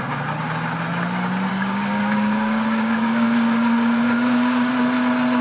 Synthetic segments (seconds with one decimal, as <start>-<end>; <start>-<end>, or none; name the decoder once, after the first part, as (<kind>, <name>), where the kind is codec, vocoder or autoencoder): 1.5-4.7 (codec, DAC)